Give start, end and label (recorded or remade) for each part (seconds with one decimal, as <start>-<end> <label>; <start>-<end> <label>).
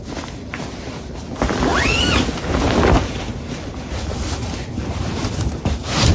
0.0-6.1 recorded